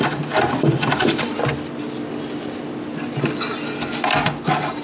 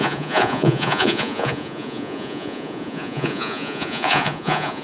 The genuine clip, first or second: first